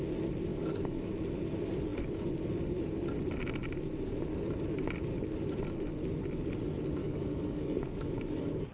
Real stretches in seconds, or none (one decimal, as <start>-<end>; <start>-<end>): 0.0-0.5; 1.1-7.0